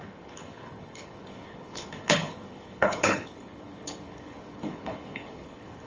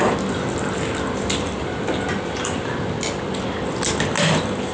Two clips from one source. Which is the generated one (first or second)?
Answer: first